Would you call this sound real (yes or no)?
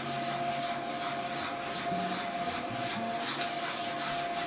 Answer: yes